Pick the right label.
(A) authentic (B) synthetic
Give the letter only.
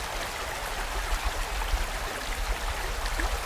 A